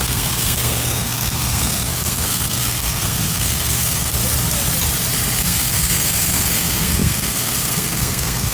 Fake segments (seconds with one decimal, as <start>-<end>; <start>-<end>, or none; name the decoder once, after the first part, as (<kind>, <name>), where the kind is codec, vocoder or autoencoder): 0.0-4.2 (codec, SNAC); 5.4-8.5